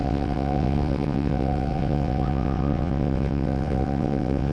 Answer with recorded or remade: remade